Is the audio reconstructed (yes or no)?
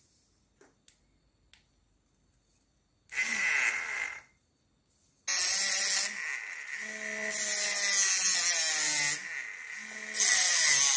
no